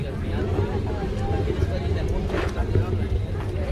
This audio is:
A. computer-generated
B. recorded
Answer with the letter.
B